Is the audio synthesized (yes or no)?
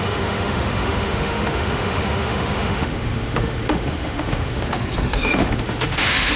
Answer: yes